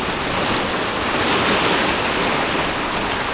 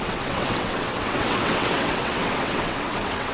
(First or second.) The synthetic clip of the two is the second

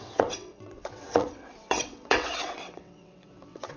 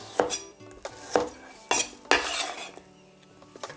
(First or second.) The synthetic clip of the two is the first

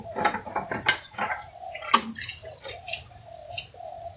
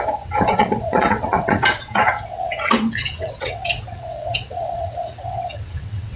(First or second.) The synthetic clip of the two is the second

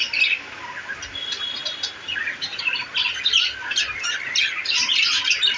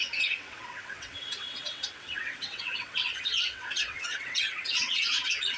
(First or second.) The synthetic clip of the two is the second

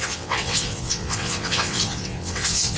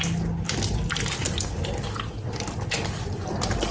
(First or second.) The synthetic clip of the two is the first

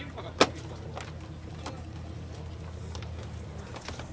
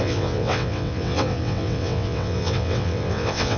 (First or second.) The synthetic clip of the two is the second